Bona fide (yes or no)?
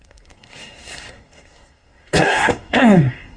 no